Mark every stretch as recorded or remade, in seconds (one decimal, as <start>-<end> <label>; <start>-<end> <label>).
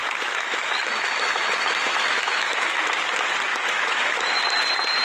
0.0-3.0 remade; 3.0-3.5 recorded; 3.5-4.4 remade; 4.4-5.0 recorded